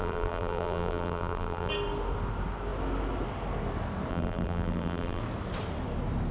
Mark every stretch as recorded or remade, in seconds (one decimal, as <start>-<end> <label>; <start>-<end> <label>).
0.0-1.7 remade; 1.7-4.1 recorded; 4.1-5.2 remade; 5.2-6.3 recorded